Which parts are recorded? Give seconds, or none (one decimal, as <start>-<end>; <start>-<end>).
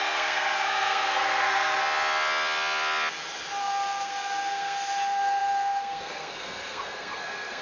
1.8-3.6